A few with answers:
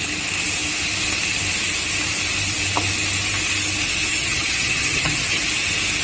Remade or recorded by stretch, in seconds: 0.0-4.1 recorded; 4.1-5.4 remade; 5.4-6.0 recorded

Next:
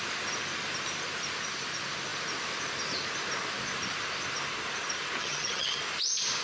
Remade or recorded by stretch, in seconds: 0.0-5.2 recorded; 5.2-5.8 remade; 5.8-6.4 recorded

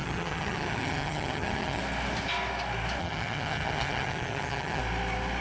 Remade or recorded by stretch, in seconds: 0.0-1.8 remade; 1.8-3.0 recorded; 3.0-4.8 remade; 4.8-5.4 recorded

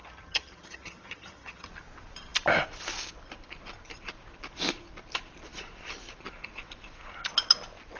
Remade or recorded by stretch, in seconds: 0.0-1.7 remade; 1.7-8.0 recorded

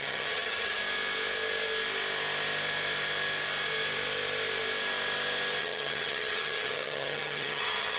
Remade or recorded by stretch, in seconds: 0.0-0.8 remade; 0.8-5.6 recorded; 5.6-8.0 remade

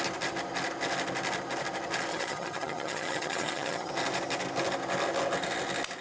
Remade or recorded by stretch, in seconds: 0.0-2.1 recorded; 2.1-3.9 remade; 3.9-6.0 recorded